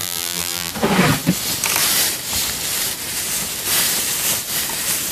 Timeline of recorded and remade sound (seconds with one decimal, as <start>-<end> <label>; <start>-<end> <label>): 0.0-0.7 remade; 0.7-5.1 recorded

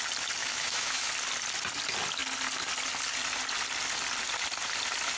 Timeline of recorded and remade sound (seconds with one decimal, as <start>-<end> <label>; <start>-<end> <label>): 0.0-0.4 recorded; 0.4-1.1 remade; 1.1-5.2 recorded